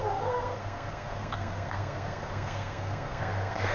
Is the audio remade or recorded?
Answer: remade